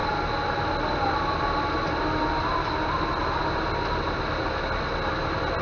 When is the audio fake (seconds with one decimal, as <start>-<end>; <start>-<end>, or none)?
none

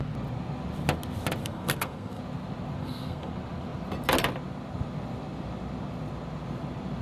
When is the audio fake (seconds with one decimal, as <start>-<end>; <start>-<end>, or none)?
1.4-2.2; 2.8-3.3